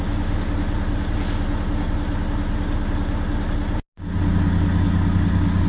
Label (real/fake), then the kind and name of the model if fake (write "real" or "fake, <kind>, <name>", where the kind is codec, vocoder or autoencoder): real